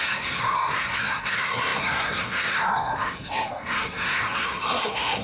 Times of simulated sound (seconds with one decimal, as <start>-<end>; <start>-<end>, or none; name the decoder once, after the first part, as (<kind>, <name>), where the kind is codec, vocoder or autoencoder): 0.0-5.2 (codec, SNAC)